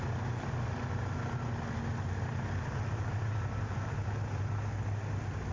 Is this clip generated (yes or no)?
no